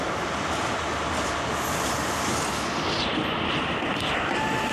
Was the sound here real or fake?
real